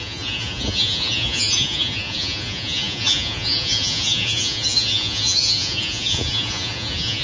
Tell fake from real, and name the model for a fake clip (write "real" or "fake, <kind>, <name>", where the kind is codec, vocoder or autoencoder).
fake, vocoder, Vocos